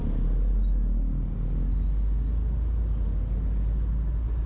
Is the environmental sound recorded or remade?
recorded